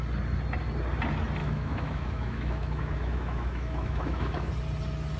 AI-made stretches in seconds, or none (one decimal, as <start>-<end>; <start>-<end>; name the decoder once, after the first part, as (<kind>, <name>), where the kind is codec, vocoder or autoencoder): 1.4-4.5 (autoencoder, DAC-VAE)